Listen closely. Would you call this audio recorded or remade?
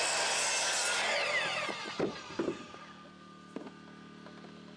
recorded